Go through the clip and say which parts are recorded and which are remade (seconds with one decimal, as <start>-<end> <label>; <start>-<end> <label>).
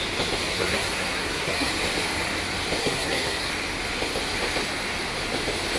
0.0-0.5 recorded; 0.5-1.7 remade; 1.7-2.8 recorded; 2.8-3.5 remade; 3.5-5.8 recorded